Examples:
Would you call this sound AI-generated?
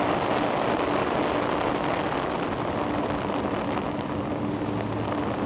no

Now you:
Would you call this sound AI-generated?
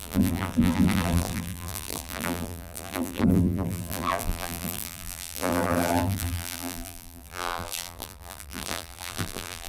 yes